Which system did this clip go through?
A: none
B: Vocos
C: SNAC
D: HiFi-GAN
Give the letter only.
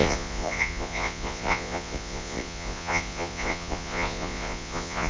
B